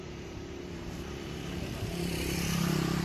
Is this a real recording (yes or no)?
no